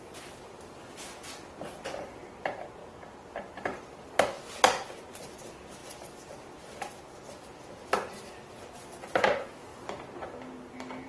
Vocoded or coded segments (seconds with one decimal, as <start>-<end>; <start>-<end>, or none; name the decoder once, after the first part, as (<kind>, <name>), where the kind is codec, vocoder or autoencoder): none